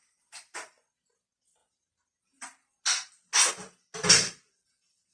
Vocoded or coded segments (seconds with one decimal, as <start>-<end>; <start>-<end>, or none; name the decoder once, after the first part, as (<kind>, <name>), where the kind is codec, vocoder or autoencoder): none

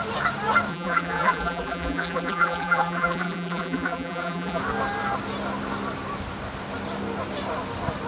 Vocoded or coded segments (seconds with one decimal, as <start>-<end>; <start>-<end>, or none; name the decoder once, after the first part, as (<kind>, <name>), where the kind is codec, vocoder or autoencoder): 0.7-4.6 (vocoder, BigVGAN v2)

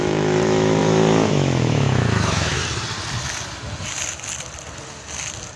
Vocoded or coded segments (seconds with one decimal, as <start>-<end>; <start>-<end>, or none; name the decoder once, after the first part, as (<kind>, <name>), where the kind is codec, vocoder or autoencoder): 0.0-0.8 (autoencoder, DAC-VAE); 1.3-2.6

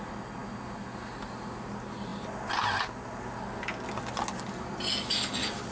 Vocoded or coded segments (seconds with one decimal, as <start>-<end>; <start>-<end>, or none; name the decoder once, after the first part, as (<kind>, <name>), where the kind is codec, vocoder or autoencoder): none

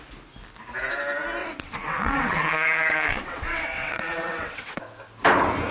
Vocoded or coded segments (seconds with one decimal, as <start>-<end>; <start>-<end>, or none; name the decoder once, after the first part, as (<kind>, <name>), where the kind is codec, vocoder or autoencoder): 1.4-4.8 (vocoder, WaveNeXt)

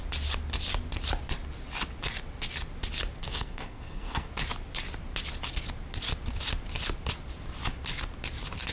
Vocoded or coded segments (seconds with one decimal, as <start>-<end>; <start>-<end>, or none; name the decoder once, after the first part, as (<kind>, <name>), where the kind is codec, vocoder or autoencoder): 3.2-4.3 (codec, SNAC)